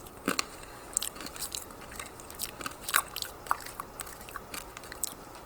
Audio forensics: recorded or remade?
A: remade